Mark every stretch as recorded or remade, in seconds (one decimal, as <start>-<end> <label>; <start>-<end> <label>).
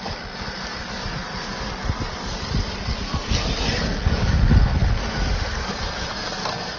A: 0.0-6.8 recorded